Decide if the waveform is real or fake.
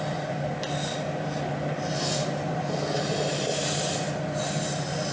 real